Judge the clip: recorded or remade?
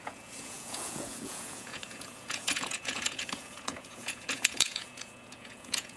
remade